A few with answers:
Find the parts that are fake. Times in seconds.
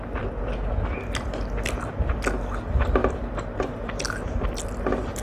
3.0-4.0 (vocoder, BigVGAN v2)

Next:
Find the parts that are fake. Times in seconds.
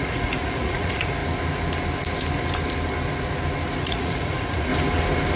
0.0-1.2 (vocoder, Vocos); 3.8-4.7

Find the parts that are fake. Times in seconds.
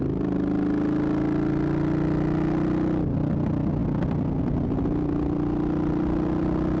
none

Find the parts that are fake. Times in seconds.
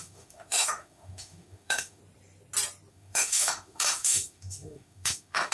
0.0-2.0 (autoencoder, DAC-VAE); 2.9-5.5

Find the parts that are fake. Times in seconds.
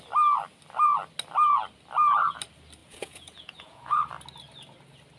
2.8-4.0 (vocoder, Vocos)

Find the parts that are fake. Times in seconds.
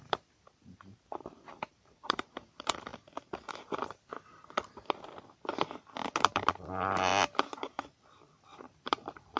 0.0-2.9 (vocoder, BigVGAN v2); 3.5-4.1; 6.2-7.1; 8.4-9.4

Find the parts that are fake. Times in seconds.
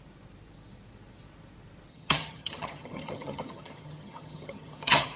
1.9-5.2 (vocoder, HiFi-GAN)